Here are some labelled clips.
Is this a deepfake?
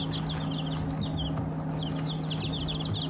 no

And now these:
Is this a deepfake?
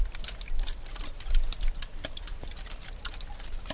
no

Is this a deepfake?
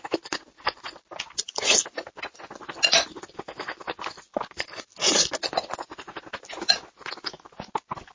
no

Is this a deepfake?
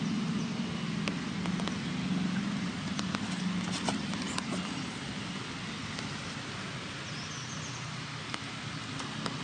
no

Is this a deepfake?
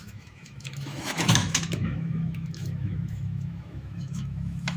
yes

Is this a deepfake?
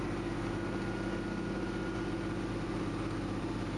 no